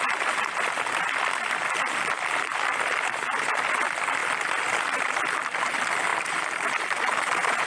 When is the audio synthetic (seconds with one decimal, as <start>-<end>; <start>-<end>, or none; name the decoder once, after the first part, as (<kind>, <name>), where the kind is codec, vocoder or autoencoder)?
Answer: none